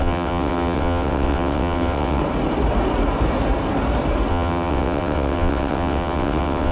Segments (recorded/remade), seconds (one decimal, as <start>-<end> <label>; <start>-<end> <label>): 0.0-2.2 remade; 2.2-4.3 recorded; 4.3-6.7 remade